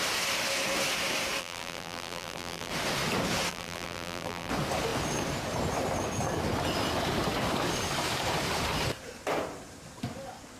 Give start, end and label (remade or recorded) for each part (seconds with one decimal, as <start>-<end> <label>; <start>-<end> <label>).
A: 0.0-1.4 recorded; 1.4-2.7 remade; 2.7-3.5 recorded; 3.5-4.5 remade; 4.5-10.6 recorded